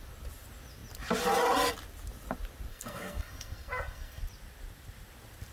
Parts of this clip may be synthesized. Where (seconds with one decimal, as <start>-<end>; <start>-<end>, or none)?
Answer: 2.7-4.2